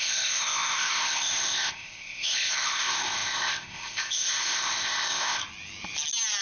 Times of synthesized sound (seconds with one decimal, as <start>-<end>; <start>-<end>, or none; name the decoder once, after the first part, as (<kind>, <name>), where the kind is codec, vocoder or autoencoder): 0.0-5.4 (codec, ZipCodec)